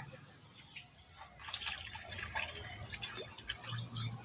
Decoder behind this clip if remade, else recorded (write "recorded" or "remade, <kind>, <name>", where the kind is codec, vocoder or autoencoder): recorded